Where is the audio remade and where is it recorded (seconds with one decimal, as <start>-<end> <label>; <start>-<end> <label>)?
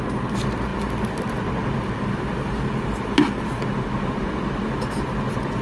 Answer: 0.0-5.6 recorded